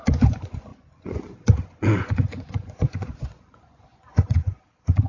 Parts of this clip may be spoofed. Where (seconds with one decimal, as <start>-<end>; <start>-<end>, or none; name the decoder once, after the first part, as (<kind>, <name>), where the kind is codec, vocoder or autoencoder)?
0.0-5.1 (vocoder, Vocos)